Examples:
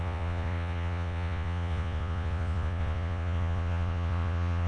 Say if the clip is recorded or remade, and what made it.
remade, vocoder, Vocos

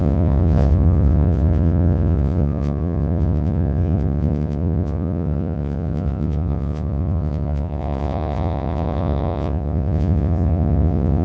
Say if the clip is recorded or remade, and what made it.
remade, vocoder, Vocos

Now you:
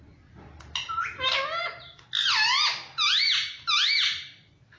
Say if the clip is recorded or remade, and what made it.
recorded